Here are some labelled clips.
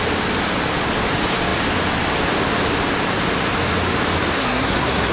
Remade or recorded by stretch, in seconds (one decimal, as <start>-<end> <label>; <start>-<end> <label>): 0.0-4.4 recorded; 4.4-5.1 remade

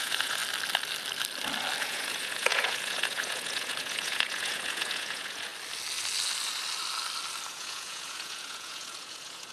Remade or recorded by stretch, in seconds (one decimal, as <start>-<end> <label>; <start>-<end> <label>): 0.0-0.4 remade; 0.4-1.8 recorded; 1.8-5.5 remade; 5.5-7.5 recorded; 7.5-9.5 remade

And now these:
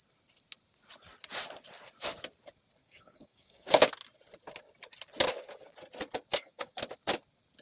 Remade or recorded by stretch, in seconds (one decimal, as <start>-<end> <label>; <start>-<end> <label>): 0.0-2.8 recorded; 2.8-3.9 remade; 3.9-6.3 recorded; 6.3-6.8 remade; 6.8-7.6 recorded

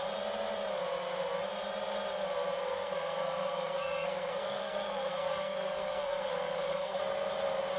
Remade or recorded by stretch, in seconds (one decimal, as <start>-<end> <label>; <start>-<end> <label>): 0.0-2.6 recorded; 2.6-7.0 remade; 7.0-7.8 recorded

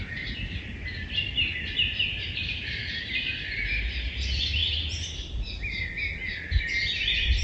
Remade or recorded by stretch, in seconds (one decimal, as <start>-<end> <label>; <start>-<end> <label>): 0.0-7.4 recorded

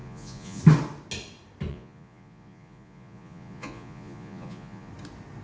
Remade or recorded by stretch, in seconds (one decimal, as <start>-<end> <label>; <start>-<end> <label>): 0.0-0.6 remade; 0.6-1.7 recorded; 1.7-4.9 remade; 4.9-5.4 recorded

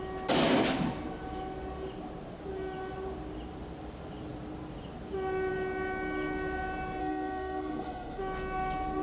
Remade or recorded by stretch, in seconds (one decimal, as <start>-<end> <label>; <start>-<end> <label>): 0.0-7.0 recorded; 7.0-8.2 remade; 8.2-9.0 recorded